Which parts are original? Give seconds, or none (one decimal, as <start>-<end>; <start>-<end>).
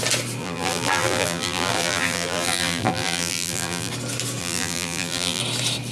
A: 0.0-0.4; 3.9-4.4; 5.4-5.9